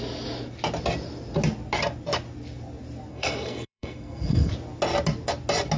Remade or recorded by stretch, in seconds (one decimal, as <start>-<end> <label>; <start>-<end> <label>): 0.0-3.1 recorded; 3.1-4.5 remade; 4.5-5.8 recorded